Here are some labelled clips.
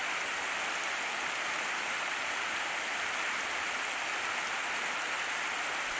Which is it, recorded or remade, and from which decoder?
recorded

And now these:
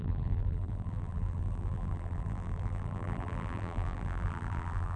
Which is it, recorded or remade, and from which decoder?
remade, vocoder, BigVGAN v2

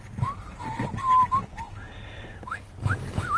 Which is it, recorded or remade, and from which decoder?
recorded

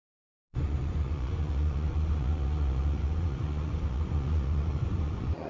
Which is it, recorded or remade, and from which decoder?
remade, vocoder, Vocos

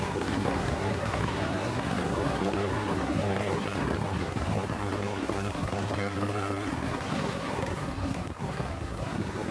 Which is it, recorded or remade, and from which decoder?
remade, codec, SNAC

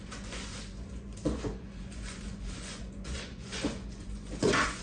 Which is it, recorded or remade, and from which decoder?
remade, vocoder, Vocos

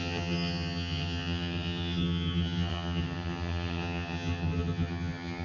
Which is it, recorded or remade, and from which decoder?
remade, vocoder, HiFi-GAN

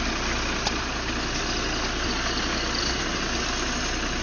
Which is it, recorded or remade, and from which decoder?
recorded